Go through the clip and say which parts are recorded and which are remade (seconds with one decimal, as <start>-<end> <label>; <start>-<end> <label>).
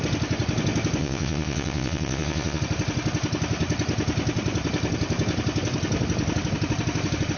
0.0-1.0 recorded; 1.0-2.6 remade; 2.6-7.4 recorded